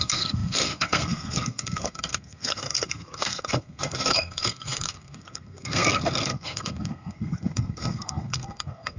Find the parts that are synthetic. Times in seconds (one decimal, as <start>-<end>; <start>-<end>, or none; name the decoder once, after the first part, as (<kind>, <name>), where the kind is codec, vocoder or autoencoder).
0.0-9.0 (codec, SNAC)